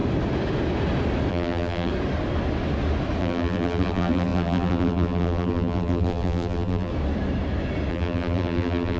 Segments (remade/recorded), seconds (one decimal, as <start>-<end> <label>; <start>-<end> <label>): 0.0-1.3 recorded; 1.3-1.9 remade; 1.9-3.2 recorded; 3.2-6.9 remade; 6.9-7.9 recorded; 7.9-9.0 remade